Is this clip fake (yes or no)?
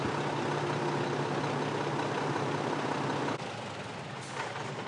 no